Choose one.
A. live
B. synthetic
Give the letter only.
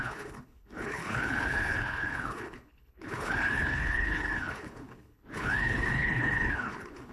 B